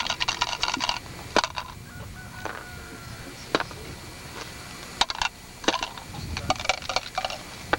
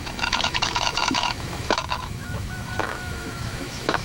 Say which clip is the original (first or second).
first